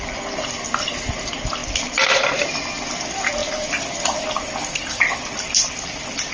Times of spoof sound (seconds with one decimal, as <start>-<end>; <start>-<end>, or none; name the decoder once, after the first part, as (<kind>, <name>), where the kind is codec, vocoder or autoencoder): none